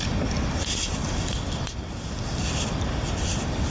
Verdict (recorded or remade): recorded